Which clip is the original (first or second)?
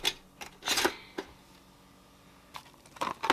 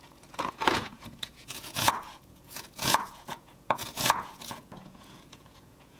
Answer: first